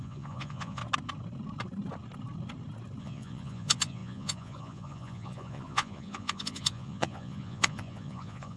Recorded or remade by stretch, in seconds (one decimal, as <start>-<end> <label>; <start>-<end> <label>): 0.0-0.8 remade; 0.8-3.0 recorded; 3.0-8.6 remade